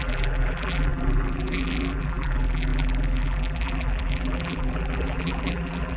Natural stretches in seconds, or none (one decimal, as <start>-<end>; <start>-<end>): none